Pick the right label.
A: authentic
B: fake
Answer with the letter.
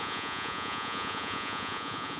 B